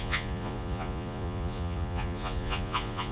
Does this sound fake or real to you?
fake